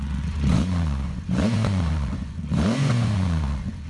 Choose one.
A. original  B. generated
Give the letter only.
B